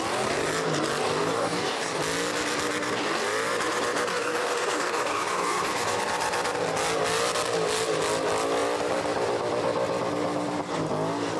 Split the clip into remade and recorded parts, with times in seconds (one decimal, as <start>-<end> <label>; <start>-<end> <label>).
0.0-1.2 recorded; 1.2-2.0 remade; 2.0-4.1 recorded; 4.1-6.0 remade; 6.0-11.4 recorded